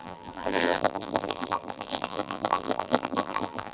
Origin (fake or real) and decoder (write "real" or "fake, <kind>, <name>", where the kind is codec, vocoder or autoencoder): fake, vocoder, BigVGAN v2